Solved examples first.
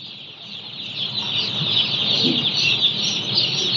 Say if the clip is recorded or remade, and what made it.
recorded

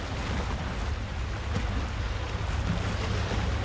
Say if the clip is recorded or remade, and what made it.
recorded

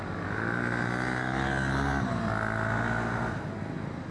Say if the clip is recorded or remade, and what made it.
recorded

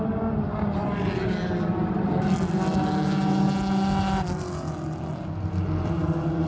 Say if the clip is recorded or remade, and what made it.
recorded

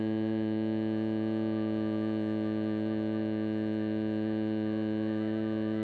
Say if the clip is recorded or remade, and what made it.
recorded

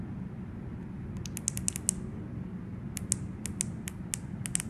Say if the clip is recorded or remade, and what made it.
recorded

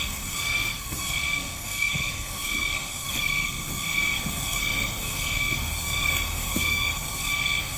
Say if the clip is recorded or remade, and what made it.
remade, codec, SNAC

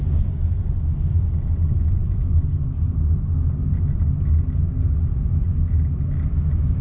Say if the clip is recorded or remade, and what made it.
recorded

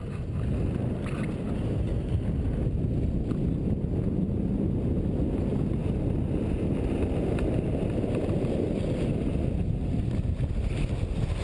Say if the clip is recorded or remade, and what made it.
recorded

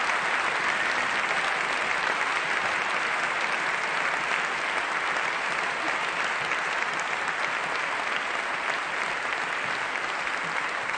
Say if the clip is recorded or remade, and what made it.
recorded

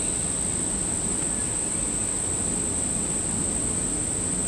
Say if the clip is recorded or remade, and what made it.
recorded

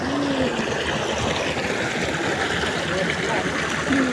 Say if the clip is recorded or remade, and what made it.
recorded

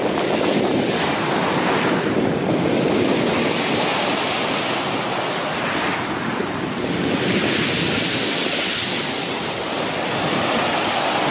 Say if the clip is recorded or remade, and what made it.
recorded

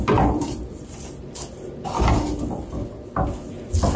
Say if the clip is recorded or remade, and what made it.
recorded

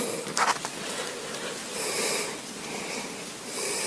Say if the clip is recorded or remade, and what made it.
recorded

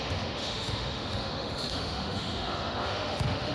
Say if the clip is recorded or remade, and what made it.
remade, autoencoder, DAC-VAE